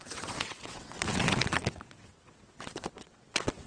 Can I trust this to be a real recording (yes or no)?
no